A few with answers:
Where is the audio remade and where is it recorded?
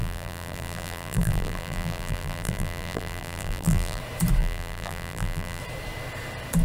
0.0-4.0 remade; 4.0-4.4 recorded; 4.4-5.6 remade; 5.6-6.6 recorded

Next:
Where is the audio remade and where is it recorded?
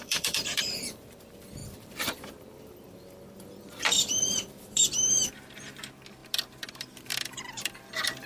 0.0-6.2 remade; 6.2-7.1 recorded; 7.1-8.3 remade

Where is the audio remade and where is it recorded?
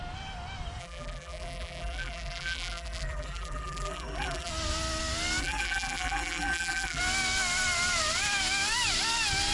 0.0-0.8 recorded; 0.8-4.5 remade; 4.5-5.4 recorded; 5.4-7.0 remade; 7.0-9.5 recorded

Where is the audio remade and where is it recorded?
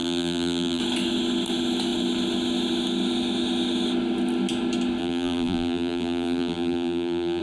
0.0-0.8 remade; 0.8-5.0 recorded; 5.0-7.4 remade